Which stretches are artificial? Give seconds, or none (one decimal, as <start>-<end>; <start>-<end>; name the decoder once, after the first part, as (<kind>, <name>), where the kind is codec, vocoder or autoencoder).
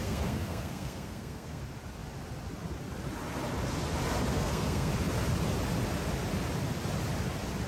0.0-1.6 (codec, SNAC); 4.3-4.9